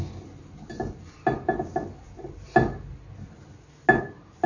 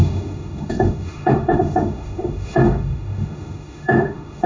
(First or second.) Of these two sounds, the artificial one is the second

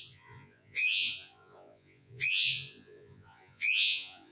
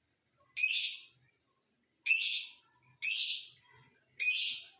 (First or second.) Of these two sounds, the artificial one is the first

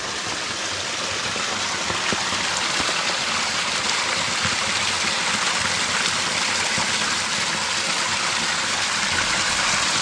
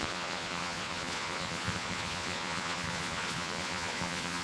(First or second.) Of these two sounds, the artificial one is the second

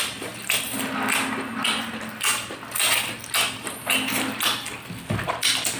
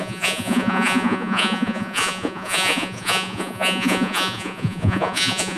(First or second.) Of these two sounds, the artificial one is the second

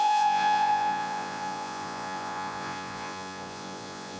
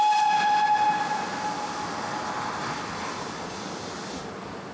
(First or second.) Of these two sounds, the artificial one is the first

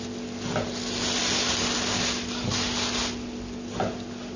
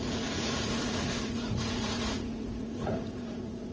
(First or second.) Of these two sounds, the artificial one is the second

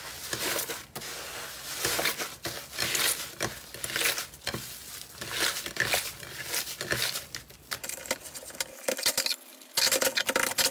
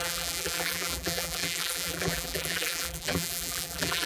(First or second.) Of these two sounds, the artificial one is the second